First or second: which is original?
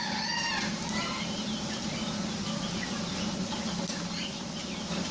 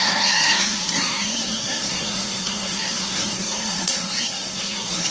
first